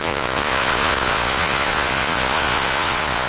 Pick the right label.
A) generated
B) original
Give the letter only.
A